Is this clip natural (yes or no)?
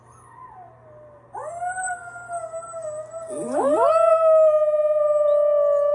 yes